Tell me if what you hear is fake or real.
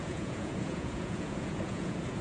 fake